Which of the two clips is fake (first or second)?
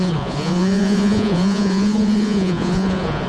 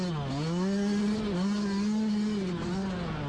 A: first